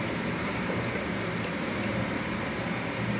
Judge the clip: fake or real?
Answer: fake